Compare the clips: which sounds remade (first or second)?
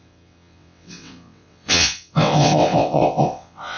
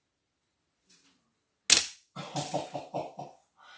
first